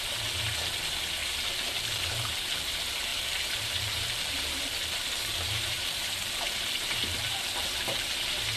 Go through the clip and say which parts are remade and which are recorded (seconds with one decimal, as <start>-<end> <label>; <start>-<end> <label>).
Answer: 0.0-1.2 recorded; 1.2-2.7 remade; 2.7-3.1 recorded; 3.1-8.2 remade; 8.2-8.6 recorded

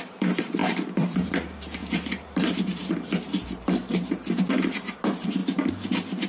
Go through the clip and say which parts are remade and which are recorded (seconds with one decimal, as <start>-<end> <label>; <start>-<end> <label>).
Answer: 0.0-5.4 remade; 5.4-6.3 recorded